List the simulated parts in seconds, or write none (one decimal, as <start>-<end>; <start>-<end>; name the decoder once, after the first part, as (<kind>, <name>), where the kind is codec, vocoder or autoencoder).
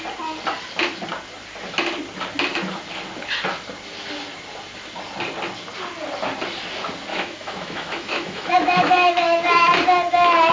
7.1-9.5 (autoencoder, DAC-VAE)